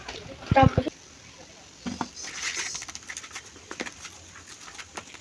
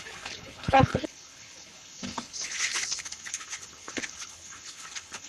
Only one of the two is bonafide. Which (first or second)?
first